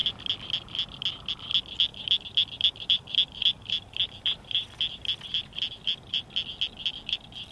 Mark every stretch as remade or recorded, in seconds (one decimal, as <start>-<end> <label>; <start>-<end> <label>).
0.0-1.9 recorded; 1.9-6.2 remade; 6.2-7.5 recorded